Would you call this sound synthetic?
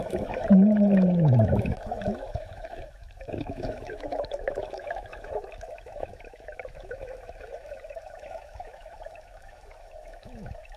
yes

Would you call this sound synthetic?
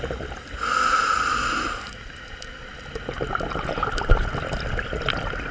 no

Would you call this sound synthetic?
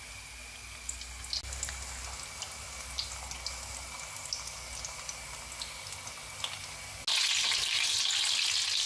no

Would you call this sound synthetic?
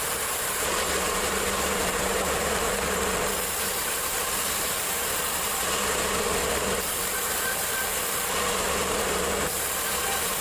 yes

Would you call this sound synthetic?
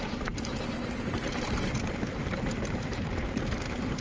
yes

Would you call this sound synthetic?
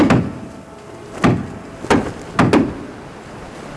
no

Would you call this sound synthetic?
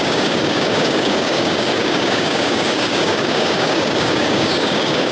yes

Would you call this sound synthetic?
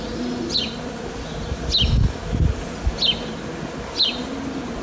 no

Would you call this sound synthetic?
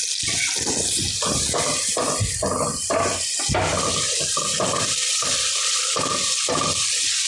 no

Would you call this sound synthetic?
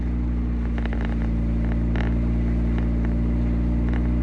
no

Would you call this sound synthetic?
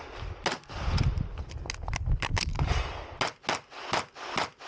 no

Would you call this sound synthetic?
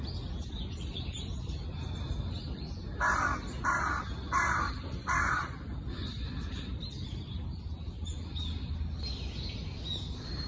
no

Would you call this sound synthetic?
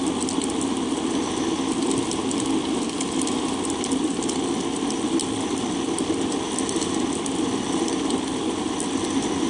no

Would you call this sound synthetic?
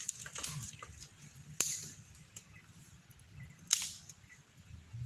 no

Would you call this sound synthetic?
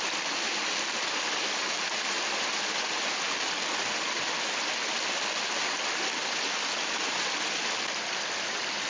no